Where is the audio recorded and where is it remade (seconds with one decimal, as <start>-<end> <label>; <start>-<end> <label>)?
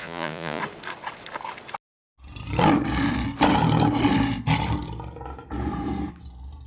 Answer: 0.0-0.6 remade; 0.6-6.7 recorded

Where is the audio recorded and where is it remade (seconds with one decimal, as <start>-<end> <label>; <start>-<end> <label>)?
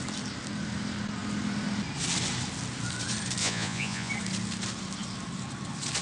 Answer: 0.0-3.4 recorded; 3.4-4.1 remade; 4.1-6.0 recorded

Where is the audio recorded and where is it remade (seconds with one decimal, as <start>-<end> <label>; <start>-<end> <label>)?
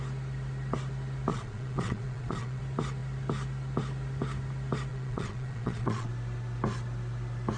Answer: 0.0-1.3 recorded; 1.3-2.6 remade; 2.6-4.9 recorded; 4.9-6.1 remade; 6.1-7.6 recorded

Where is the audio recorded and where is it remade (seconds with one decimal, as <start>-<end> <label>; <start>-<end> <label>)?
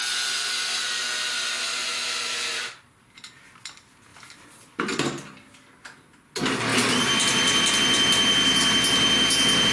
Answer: 0.0-9.7 recorded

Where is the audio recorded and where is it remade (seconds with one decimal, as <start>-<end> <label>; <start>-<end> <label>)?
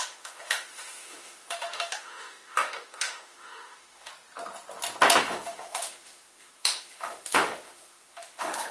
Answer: 0.0-4.1 remade; 4.1-5.2 recorded; 5.2-8.7 remade